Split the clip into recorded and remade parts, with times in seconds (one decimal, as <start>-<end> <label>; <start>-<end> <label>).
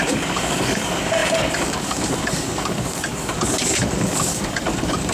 0.0-5.1 remade